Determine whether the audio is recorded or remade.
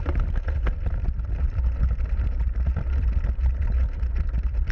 remade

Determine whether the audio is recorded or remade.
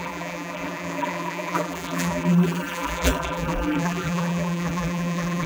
remade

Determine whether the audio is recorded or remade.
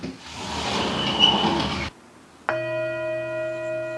recorded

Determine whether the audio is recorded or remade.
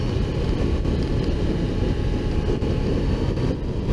recorded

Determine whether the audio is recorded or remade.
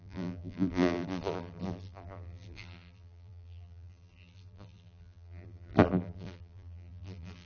remade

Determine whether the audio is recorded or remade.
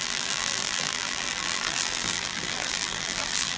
remade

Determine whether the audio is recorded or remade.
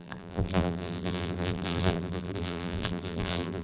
remade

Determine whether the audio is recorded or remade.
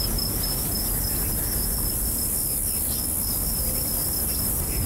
recorded